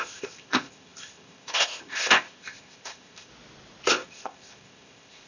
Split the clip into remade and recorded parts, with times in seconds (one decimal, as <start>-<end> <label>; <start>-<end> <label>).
0.0-3.3 remade; 3.3-3.9 recorded; 3.9-5.3 remade